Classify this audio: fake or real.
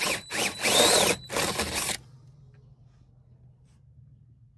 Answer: real